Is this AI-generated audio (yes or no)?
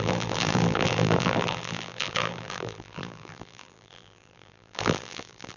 yes